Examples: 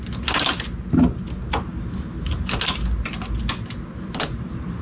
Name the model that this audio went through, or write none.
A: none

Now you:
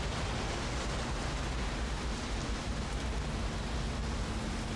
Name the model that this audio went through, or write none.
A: none